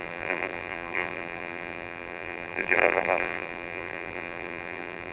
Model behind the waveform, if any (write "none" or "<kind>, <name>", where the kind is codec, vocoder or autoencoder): vocoder, BigVGAN v2